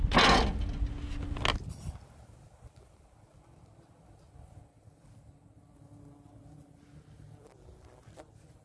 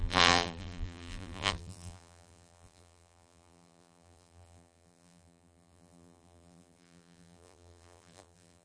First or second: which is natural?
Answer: first